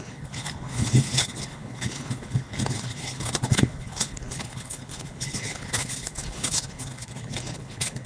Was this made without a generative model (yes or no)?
no